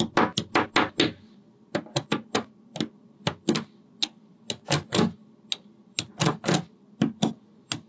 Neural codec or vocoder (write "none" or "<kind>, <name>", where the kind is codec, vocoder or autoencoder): none